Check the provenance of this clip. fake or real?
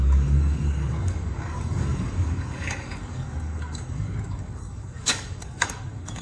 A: fake